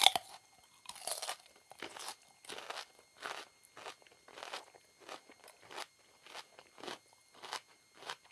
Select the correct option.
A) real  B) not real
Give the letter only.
A